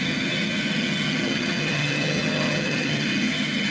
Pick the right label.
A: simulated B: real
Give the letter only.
A